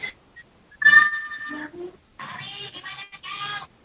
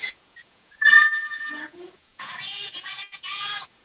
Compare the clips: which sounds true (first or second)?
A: first